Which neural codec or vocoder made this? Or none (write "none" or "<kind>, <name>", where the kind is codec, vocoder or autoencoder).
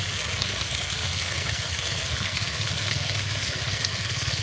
codec, SNAC